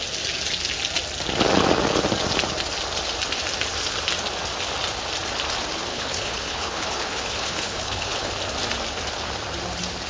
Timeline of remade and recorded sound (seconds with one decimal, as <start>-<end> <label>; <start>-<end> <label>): 0.0-5.9 recorded; 5.9-8.3 remade; 8.3-10.1 recorded